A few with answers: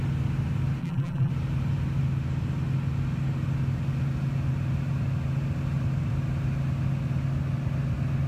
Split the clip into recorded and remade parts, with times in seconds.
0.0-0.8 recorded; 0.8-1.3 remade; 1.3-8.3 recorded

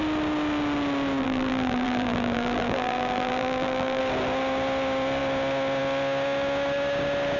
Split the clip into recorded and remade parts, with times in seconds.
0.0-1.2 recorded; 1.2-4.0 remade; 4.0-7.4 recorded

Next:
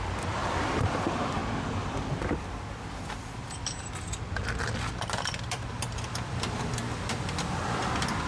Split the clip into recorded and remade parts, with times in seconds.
0.0-1.4 remade; 1.4-1.9 recorded; 1.9-3.4 remade; 3.4-4.9 recorded; 4.9-8.3 remade

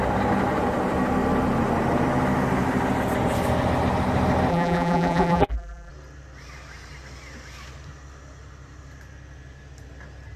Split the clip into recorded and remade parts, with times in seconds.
0.0-4.5 recorded; 4.5-5.9 remade; 5.9-10.4 recorded

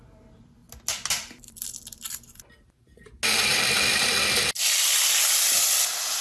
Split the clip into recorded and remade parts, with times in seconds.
0.0-6.2 recorded

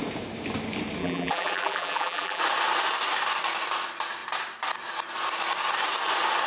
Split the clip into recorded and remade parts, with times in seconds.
0.0-1.0 recorded; 1.0-2.4 remade; 2.4-6.5 recorded

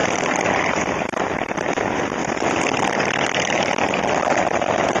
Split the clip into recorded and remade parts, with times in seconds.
0.0-0.8 recorded; 0.8-2.2 remade; 2.2-4.3 recorded; 4.3-5.0 remade